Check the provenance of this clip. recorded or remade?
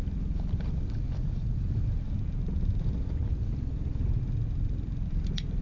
recorded